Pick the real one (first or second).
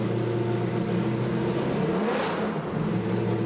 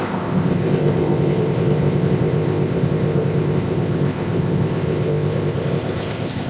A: first